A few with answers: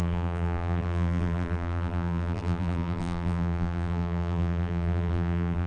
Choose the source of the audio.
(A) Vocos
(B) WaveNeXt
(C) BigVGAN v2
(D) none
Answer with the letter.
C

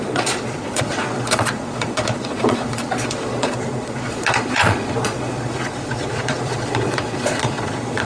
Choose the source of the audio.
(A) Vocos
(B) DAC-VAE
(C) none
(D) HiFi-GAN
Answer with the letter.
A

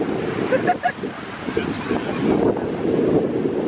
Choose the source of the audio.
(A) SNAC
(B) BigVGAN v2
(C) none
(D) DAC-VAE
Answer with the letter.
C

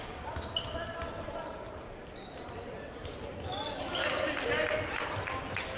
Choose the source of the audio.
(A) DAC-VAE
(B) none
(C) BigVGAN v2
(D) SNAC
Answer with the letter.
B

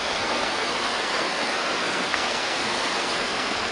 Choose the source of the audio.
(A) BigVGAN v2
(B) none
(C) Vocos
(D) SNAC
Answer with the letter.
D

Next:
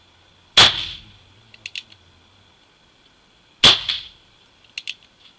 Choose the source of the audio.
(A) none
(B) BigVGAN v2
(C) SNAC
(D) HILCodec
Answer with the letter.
A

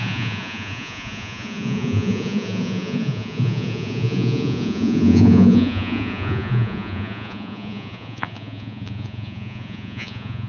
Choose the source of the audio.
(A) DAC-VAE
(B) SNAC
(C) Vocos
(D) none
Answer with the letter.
C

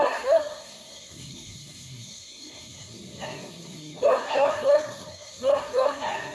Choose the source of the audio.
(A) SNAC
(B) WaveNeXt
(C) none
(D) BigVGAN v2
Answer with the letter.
A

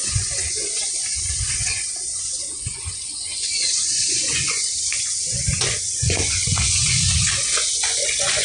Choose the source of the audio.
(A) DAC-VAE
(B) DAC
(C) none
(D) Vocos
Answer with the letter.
D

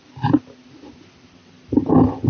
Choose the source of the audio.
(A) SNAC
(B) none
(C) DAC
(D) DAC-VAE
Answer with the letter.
B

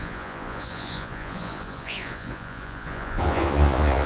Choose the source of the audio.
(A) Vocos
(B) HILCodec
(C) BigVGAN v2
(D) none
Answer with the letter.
A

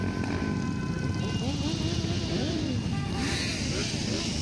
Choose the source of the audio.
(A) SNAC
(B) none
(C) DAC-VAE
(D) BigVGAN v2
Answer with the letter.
B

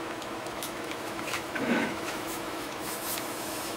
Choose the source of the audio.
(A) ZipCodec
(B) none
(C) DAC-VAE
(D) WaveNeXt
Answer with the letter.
C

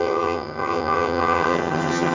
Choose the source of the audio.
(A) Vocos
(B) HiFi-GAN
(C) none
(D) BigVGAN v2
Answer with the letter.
B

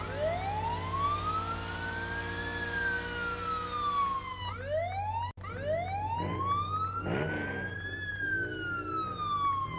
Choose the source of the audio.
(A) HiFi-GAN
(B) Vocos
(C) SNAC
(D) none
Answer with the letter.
D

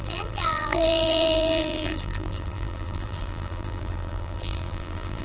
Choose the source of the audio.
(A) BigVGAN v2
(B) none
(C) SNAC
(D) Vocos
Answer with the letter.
A